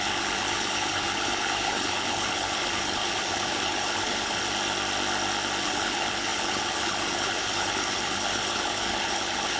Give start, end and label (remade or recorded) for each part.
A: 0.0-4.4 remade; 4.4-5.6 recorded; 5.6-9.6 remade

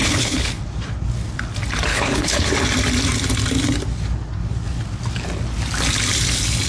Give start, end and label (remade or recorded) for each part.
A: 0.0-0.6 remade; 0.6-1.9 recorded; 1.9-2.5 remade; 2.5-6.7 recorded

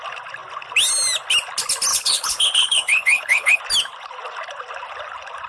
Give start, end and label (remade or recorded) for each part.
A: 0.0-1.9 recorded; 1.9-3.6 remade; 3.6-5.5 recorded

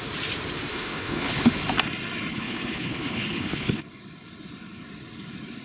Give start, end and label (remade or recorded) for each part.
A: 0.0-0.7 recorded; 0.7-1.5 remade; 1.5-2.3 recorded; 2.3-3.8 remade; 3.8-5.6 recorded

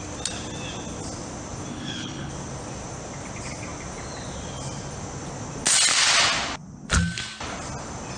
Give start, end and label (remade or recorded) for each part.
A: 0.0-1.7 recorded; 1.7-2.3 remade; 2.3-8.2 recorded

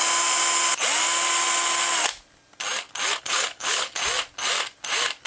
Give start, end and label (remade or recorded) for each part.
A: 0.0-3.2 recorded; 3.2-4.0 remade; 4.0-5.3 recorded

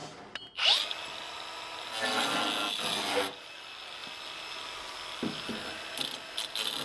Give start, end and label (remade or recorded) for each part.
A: 0.0-6.8 recorded

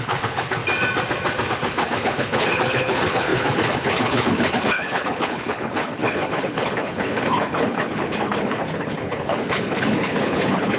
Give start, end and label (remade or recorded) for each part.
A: 0.0-0.6 remade; 0.6-1.5 recorded; 1.5-10.8 remade